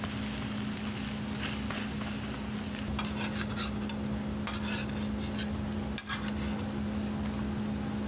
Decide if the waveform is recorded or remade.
recorded